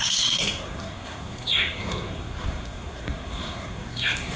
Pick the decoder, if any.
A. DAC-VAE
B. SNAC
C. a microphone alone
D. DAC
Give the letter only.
B